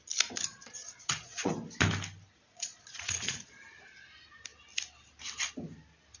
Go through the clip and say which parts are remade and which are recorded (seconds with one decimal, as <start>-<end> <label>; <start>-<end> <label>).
0.0-0.5 recorded; 0.5-1.5 remade; 1.5-2.5 recorded; 2.5-3.6 remade; 3.6-6.2 recorded